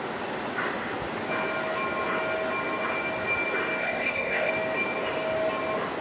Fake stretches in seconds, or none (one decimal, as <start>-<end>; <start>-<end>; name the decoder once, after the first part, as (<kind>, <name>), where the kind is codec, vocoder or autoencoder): 3.8-4.5 (codec, ZipCodec)